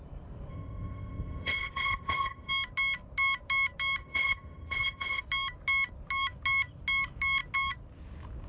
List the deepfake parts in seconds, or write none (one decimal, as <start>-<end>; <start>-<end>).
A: 0.5-2.5; 4.0-5.2

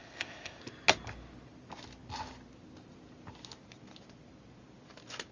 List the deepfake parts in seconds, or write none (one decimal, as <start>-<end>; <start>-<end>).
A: 0.0-0.6

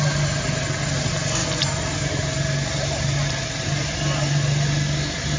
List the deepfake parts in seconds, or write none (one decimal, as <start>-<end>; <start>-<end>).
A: none

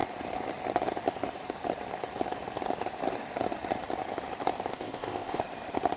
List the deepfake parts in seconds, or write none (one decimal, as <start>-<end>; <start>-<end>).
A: 4.7-5.4